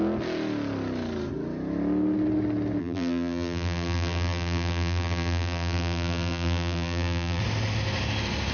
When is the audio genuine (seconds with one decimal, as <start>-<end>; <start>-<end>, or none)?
0.0-2.8; 7.4-8.5

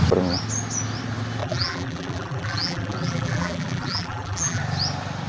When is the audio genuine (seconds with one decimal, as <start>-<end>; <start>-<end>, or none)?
0.0-1.4; 4.6-5.3

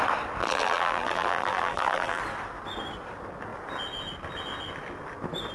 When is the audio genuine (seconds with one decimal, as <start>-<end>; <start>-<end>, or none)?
0.0-0.4; 2.2-5.5

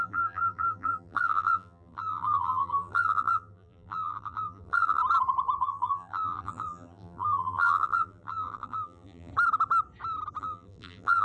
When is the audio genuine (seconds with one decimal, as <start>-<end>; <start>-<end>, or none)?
5.0-5.6; 9.3-10.4

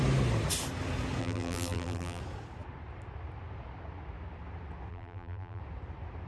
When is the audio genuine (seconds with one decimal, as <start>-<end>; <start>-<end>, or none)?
0.0-1.2; 2.2-4.9; 5.6-6.3

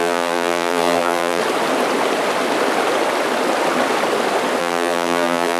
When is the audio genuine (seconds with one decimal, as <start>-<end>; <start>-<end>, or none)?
1.4-4.6